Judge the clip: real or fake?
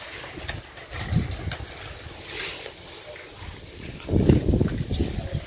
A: real